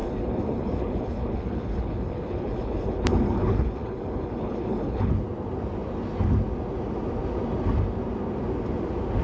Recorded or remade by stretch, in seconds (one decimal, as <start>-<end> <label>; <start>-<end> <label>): 0.0-5.1 remade; 5.1-9.2 recorded